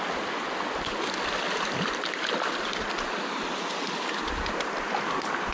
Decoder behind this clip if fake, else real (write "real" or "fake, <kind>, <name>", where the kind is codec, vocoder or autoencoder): real